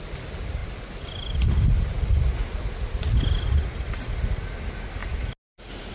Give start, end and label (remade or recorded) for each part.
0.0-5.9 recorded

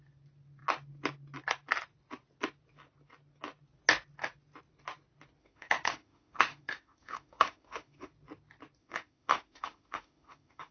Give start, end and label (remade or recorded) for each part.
0.0-5.4 recorded; 5.4-8.1 remade; 8.1-8.8 recorded; 8.8-10.7 remade

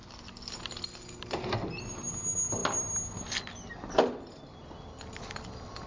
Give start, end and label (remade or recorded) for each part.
0.0-5.9 recorded

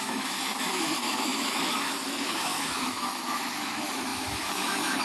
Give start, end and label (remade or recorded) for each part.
0.0-5.0 remade

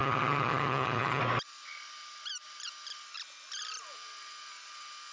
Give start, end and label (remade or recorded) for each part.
0.0-1.2 remade; 1.2-5.1 recorded

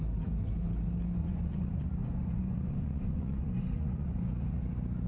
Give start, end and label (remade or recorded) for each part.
0.0-1.2 recorded; 1.2-4.3 remade; 4.3-5.1 recorded